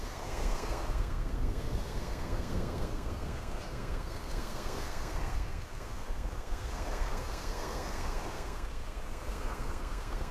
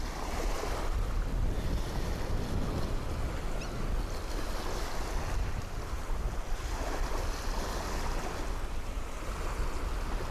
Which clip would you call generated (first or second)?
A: first